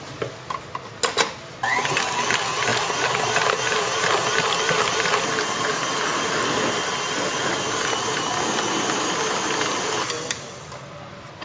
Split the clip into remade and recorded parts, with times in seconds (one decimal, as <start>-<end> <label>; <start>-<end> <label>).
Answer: 0.0-11.4 recorded